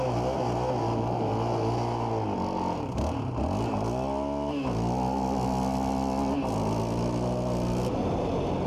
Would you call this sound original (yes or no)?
yes